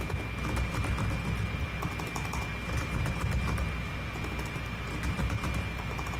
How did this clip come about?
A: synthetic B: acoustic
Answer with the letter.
B